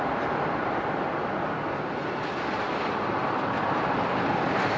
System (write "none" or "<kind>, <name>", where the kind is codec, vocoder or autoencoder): none